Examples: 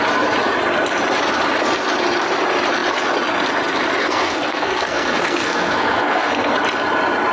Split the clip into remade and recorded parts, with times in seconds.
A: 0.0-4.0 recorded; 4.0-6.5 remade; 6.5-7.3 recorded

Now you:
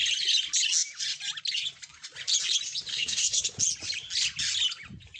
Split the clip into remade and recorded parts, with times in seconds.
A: 0.0-2.9 recorded; 2.9-3.4 remade; 3.4-5.2 recorded

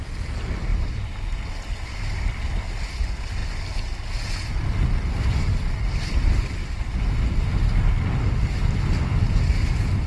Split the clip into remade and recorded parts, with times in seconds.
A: 0.0-10.1 recorded

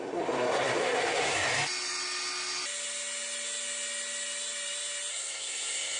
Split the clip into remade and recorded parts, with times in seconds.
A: 0.0-1.5 remade; 1.5-5.1 recorded; 5.1-6.0 remade

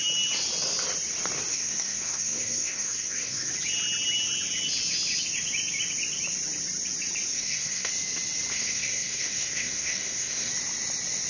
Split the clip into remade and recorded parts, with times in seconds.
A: 0.0-1.5 recorded; 1.5-3.5 remade; 3.5-7.3 recorded; 7.3-7.9 remade; 7.9-8.5 recorded; 8.5-10.5 remade; 10.5-11.3 recorded

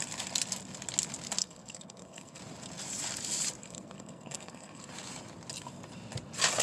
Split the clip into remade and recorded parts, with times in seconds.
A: 0.0-1.4 recorded; 1.4-2.4 remade; 2.4-3.6 recorded; 3.6-4.9 remade; 4.9-6.6 recorded